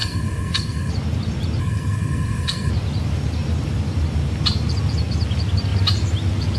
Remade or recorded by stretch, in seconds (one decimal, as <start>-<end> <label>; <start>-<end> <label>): 0.0-0.9 remade; 0.9-1.6 recorded; 1.6-2.7 remade; 2.7-6.6 recorded